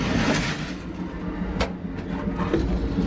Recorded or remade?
recorded